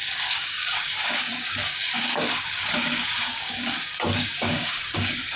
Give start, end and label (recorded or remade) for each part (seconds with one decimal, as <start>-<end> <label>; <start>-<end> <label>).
0.0-5.4 remade